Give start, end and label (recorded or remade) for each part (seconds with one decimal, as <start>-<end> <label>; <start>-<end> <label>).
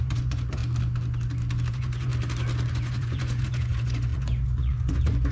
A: 0.0-0.6 remade; 0.6-1.7 recorded; 1.7-2.1 remade; 2.1-2.7 recorded; 2.7-5.3 remade